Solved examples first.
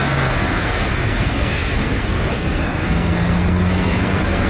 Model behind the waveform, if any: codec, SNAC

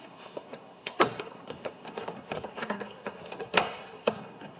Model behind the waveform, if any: codec, SNAC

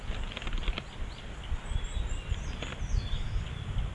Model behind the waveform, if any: none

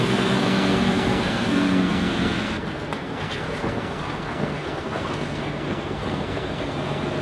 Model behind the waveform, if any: codec, SNAC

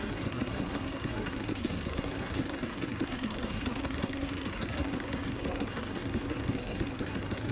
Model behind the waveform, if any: codec, SNAC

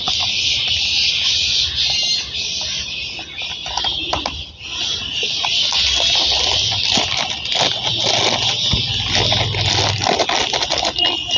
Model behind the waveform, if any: none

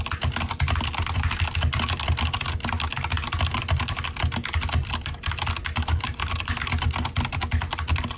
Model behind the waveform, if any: none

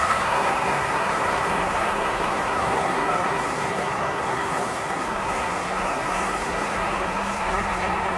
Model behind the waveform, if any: codec, SNAC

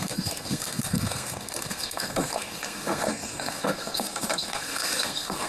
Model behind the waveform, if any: codec, SNAC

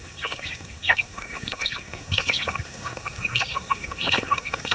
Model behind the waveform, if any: codec, SNAC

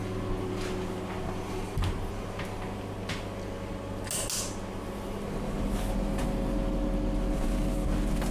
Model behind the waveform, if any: none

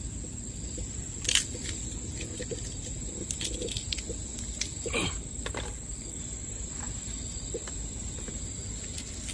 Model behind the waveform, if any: none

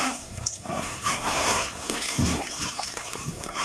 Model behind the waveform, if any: codec, SNAC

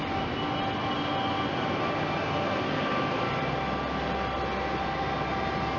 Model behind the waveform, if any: none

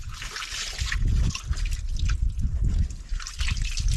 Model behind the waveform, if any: none